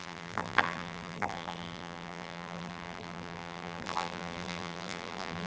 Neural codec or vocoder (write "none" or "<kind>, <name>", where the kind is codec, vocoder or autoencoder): vocoder, BigVGAN v2